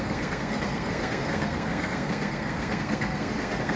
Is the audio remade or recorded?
remade